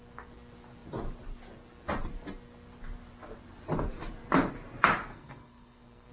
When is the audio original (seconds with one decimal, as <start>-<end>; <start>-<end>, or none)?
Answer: 0.0-5.1